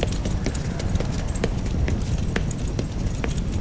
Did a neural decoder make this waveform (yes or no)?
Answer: no